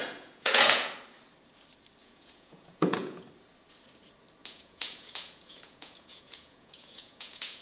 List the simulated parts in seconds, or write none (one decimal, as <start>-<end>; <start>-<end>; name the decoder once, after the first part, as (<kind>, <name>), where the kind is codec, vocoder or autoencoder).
0.0-0.9 (vocoder, Vocos); 2.0-3.2; 4.4-7.6